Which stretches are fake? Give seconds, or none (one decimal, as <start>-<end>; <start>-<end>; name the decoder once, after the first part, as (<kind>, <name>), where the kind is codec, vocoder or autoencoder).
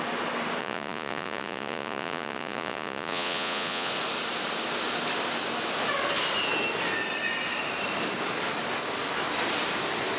0.6-3.9 (vocoder, Vocos)